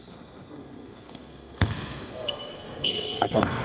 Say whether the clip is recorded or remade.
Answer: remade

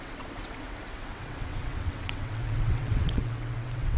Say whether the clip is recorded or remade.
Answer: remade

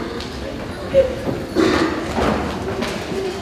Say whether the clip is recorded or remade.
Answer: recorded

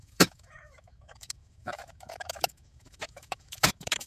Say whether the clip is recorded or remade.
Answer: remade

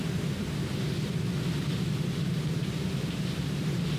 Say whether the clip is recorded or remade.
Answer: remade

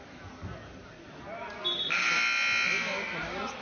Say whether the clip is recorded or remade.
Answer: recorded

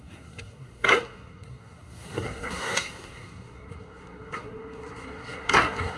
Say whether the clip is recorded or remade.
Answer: remade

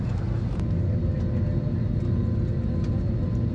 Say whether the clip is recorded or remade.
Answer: recorded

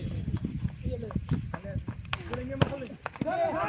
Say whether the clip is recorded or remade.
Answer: recorded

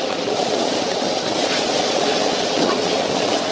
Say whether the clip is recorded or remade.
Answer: remade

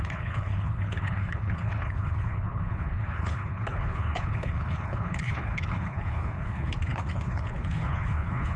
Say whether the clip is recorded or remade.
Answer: remade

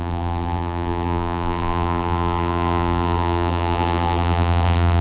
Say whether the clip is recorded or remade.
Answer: remade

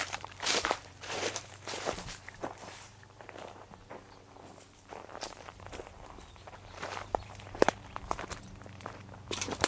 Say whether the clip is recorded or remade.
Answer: remade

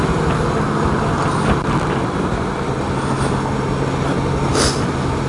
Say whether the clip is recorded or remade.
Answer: recorded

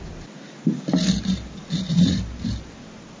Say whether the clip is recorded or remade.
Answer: recorded